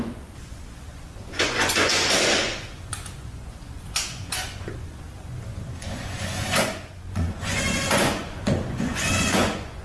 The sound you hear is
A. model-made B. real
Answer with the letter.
A